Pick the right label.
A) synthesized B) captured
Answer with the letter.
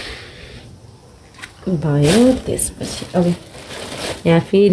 B